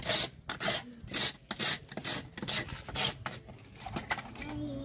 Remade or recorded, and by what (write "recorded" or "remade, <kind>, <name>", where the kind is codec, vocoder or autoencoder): recorded